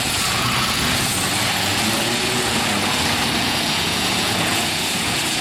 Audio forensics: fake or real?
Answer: fake